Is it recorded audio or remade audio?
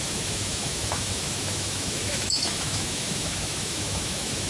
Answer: remade